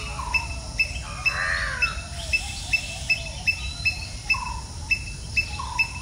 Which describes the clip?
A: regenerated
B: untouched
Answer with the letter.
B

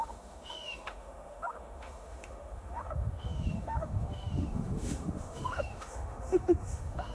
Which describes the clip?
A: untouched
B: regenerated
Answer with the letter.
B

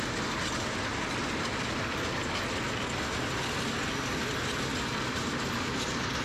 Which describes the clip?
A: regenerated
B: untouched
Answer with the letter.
B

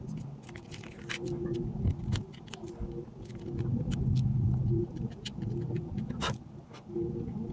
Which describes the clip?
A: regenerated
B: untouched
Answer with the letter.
B